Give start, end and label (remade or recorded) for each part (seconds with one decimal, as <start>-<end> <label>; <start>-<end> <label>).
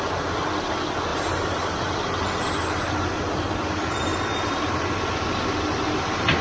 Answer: 0.0-1.1 recorded; 1.1-2.9 remade; 2.9-4.1 recorded; 4.1-4.8 remade; 4.8-6.4 recorded